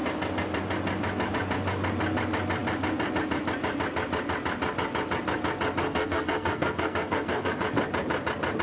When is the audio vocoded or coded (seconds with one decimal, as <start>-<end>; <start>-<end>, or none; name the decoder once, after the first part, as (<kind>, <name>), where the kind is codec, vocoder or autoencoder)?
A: 5.8-7.6 (codec, SNAC)